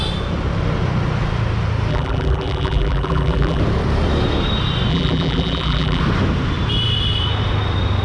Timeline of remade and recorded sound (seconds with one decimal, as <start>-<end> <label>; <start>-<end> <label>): 0.0-1.9 recorded; 1.9-3.6 remade; 3.6-4.9 recorded; 4.9-6.0 remade; 6.0-8.0 recorded